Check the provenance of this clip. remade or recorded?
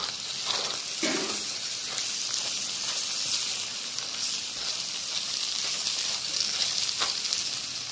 recorded